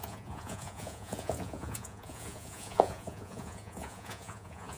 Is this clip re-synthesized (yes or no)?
yes